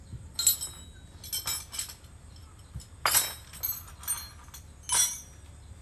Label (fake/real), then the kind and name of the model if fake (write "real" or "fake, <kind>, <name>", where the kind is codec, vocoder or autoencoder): real